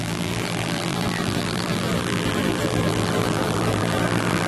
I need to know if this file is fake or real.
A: fake